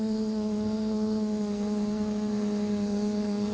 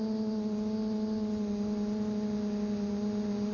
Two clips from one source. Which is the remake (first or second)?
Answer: first